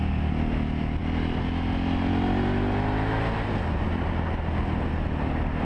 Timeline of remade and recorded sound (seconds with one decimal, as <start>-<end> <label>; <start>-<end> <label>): 0.0-5.6 recorded